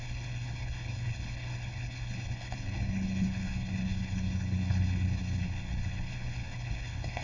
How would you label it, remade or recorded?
remade